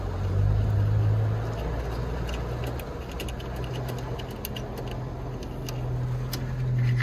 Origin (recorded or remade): recorded